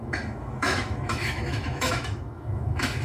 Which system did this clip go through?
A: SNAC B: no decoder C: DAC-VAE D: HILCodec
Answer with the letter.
C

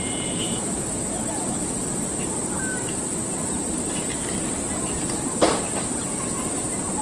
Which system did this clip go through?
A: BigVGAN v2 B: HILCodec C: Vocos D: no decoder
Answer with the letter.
A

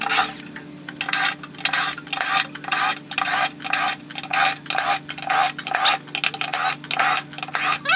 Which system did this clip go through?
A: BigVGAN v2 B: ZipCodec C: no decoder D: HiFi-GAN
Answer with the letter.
C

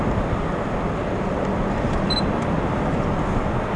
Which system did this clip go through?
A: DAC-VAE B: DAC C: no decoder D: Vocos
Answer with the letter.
C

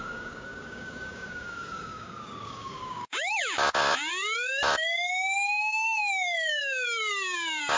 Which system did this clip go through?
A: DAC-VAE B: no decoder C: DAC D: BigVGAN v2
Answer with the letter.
C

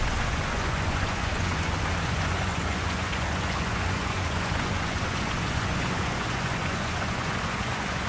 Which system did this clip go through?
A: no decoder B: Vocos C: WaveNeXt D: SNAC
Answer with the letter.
B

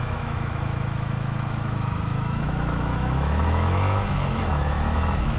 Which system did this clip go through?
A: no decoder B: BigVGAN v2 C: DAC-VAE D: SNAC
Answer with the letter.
C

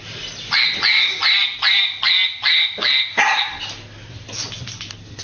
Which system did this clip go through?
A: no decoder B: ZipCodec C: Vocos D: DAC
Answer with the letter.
A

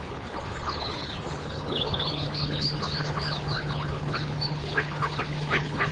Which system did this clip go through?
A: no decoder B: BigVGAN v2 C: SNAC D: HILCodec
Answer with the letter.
D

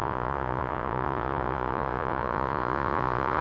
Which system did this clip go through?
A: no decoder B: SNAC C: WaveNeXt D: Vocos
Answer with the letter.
D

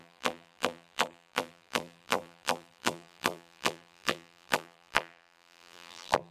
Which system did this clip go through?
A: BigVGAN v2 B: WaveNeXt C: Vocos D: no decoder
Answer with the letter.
A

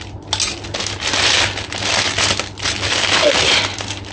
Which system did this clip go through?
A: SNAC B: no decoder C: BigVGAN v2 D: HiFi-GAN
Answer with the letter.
B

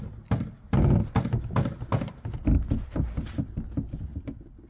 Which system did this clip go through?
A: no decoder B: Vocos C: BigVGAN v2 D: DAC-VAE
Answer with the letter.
A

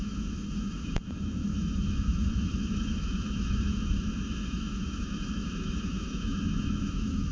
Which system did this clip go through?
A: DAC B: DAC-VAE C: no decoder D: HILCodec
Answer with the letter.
B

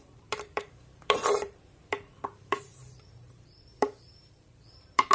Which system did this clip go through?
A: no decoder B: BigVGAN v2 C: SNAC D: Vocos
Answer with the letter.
B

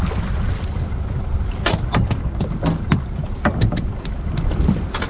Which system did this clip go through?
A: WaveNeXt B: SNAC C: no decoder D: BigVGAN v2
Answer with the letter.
C